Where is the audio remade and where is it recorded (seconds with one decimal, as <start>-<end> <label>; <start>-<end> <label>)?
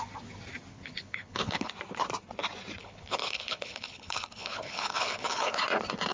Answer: 0.0-0.7 recorded; 0.7-1.7 remade; 1.7-2.8 recorded; 2.8-5.6 remade; 5.6-6.1 recorded